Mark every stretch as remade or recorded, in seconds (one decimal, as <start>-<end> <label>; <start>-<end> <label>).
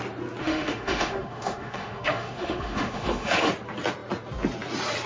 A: 0.0-0.4 recorded; 0.4-3.5 remade; 3.5-5.1 recorded